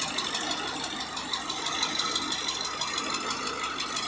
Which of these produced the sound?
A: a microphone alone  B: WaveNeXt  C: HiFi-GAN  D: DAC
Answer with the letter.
A